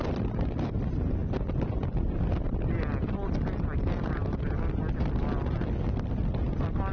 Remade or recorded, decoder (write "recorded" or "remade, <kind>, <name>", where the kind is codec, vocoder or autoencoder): recorded